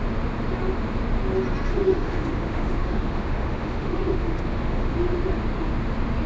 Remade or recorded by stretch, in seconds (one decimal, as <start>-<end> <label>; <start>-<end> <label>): 0.0-1.7 recorded; 1.7-4.9 remade; 4.9-6.3 recorded